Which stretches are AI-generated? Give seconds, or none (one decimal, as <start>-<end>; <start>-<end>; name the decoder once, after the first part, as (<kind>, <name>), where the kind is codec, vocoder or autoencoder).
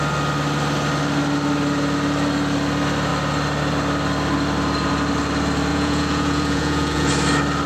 5.7-7.1 (vocoder, Vocos)